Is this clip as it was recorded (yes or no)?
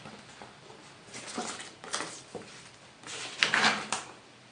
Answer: no